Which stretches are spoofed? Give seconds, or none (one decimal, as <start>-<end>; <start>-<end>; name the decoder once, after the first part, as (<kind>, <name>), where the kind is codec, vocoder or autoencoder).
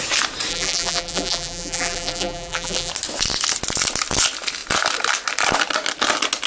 0.5-2.9 (vocoder, BigVGAN v2)